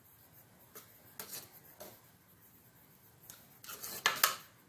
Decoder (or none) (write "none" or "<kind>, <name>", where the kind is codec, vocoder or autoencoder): none